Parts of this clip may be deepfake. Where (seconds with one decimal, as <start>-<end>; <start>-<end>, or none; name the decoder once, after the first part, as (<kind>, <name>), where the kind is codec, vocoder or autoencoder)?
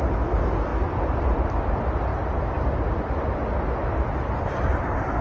0.0-2.1 (vocoder, BigVGAN v2); 4.4-5.2